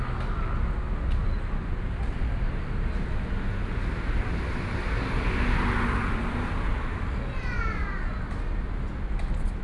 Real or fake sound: real